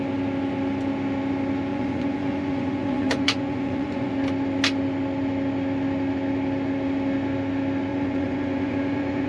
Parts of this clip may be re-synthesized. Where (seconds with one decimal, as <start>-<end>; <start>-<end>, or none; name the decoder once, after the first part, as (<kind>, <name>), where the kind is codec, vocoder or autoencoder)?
1.7-4.1 (vocoder, Vocos); 7.9-9.3